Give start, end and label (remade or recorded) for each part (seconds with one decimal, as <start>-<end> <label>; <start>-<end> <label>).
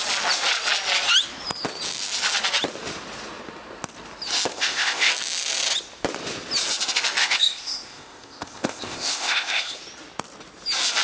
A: 0.0-4.5 recorded; 4.5-5.1 remade; 5.1-7.2 recorded; 7.2-9.8 remade; 9.8-11.0 recorded